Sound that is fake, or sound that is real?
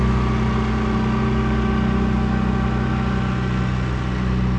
real